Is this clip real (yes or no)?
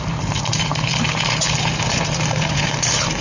no